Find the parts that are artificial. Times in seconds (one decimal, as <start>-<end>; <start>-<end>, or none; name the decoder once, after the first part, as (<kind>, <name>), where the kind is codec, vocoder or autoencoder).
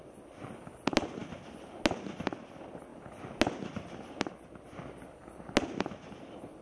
none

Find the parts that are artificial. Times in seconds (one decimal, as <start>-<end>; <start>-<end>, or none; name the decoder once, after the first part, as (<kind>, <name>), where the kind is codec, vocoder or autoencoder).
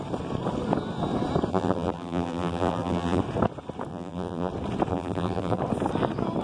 1.5-3.2 (vocoder, BigVGAN v2); 3.9-4.5; 4.9-5.6